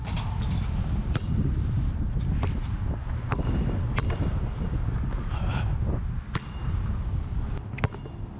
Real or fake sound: real